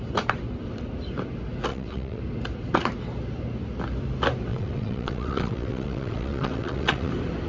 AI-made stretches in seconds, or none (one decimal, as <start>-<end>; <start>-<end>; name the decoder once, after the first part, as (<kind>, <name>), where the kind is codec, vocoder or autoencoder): 1.7-2.2 (vocoder, WaveNeXt); 4.5-7.1